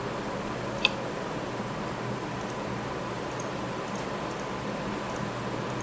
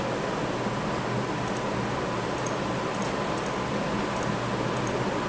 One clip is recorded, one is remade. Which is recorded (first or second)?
second